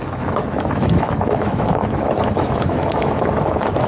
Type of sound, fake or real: fake